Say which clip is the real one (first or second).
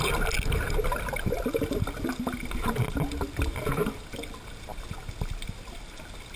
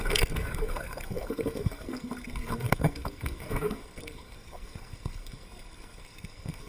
first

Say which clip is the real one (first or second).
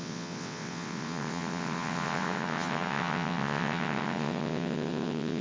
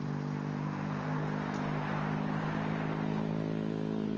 second